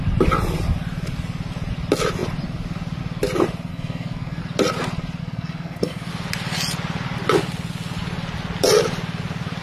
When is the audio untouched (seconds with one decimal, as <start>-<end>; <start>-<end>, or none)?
0.0-3.7; 4.4-5.2; 6.1-9.6

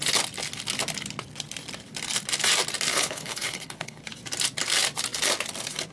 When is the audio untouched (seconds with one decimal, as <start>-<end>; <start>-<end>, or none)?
0.0-2.9; 4.0-5.9